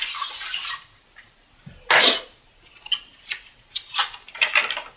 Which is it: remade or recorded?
recorded